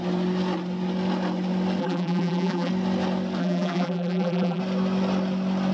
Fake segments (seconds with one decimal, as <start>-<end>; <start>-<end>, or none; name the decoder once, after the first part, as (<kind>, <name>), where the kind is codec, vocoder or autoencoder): 1.8-2.7 (vocoder, BigVGAN v2); 3.4-4.6